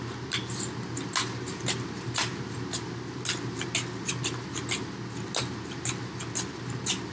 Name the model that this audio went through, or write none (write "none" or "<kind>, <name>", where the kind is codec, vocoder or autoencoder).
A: none